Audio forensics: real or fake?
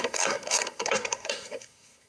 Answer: fake